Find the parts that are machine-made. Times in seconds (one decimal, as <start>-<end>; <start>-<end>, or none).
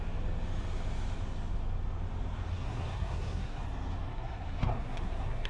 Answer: 2.5-3.6; 4.1-5.5